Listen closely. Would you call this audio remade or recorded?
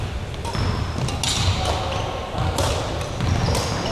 recorded